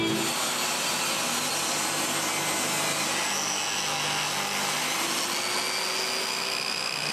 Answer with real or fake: real